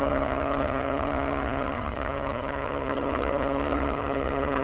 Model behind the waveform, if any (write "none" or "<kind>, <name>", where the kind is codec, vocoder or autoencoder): vocoder, HiFi-GAN